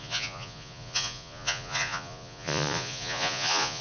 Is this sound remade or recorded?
remade